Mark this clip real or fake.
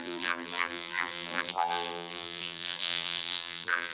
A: fake